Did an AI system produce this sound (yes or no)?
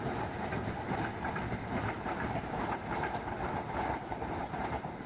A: yes